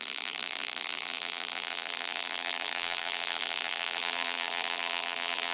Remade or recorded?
remade